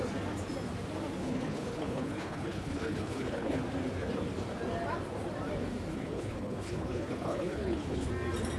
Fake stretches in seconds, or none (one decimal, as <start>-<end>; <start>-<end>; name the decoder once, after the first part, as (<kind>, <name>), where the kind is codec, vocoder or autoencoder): 1.2-3.6 (codec, HILCodec); 5.9-8.1